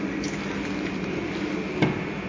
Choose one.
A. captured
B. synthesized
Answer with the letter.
A